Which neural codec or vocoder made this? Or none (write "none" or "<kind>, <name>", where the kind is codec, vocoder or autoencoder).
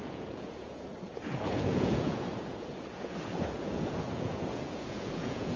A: vocoder, Vocos